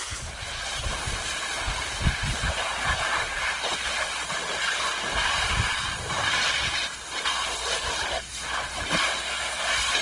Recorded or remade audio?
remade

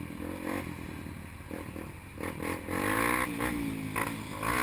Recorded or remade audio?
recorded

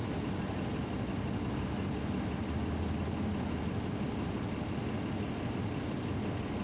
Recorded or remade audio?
recorded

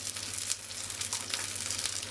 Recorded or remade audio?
recorded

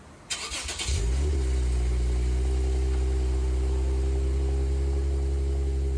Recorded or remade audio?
recorded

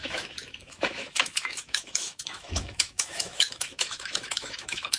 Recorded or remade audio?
remade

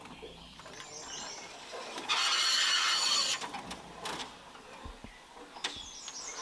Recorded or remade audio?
recorded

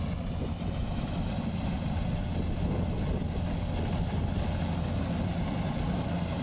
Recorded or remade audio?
recorded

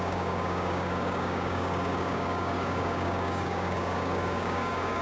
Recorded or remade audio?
remade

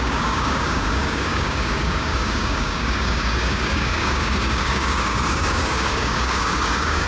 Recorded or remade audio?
remade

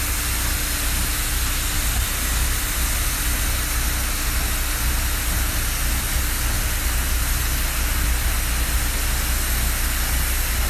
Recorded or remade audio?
recorded